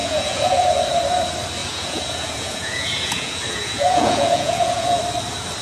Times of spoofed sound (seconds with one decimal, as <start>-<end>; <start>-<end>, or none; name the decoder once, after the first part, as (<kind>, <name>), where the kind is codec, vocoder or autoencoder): 0.0-1.0 (vocoder, Vocos); 1.6-5.0